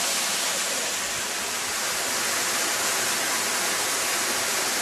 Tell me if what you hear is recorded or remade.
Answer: recorded